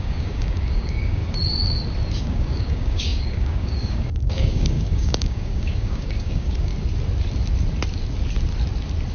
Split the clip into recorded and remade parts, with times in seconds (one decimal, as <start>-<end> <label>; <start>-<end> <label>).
0.0-1.2 remade; 1.2-2.2 recorded; 2.2-6.7 remade; 6.7-9.1 recorded